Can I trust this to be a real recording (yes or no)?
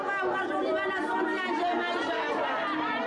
yes